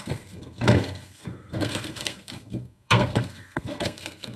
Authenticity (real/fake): fake